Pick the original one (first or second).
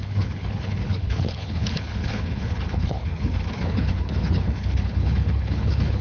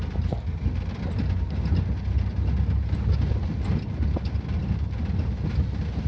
second